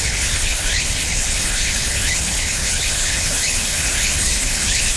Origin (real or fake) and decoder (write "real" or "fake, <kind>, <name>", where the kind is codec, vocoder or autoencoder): fake, codec, HILCodec